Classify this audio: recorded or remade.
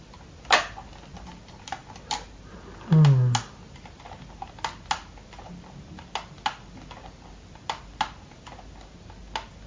recorded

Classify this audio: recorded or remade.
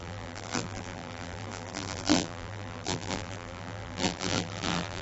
remade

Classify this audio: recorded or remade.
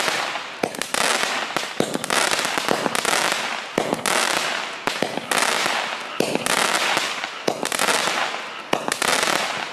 recorded